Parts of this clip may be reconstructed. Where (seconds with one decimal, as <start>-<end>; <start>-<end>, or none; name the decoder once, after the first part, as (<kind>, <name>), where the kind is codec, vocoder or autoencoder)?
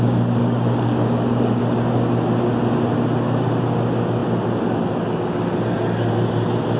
0.4-1.6 (codec, DAC)